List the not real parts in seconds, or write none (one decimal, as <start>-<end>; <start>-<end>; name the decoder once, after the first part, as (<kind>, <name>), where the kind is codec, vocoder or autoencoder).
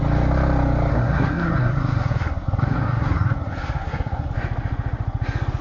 0.9-4.3 (codec, SNAC)